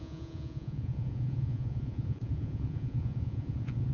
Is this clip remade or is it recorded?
remade